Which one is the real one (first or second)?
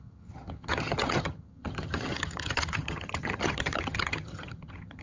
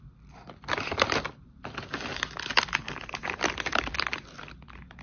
second